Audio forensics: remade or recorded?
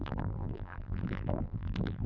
remade